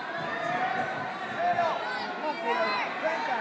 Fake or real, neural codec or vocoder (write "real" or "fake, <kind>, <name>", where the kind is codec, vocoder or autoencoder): real